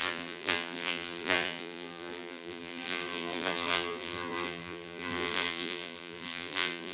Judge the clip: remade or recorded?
remade